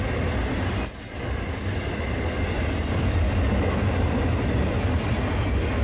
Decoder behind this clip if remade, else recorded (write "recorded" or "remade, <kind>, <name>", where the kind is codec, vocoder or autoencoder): recorded